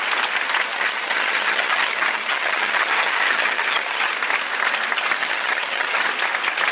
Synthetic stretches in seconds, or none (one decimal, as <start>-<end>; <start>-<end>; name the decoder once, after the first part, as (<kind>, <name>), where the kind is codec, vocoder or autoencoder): 0.7-4.1 (vocoder, HiFi-GAN); 5.2-6.0